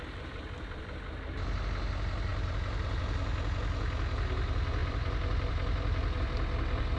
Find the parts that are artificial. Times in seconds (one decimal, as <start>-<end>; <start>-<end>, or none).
4.8-6.2